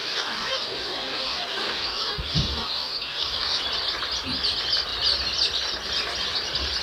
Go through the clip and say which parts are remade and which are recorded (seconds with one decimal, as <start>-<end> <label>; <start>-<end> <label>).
0.0-3.6 remade; 3.6-6.8 recorded